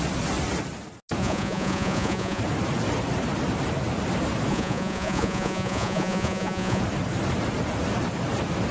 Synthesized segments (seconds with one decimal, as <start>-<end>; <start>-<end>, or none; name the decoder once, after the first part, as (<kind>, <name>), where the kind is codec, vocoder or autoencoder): 1.2-2.4 (vocoder, Vocos); 4.5-6.8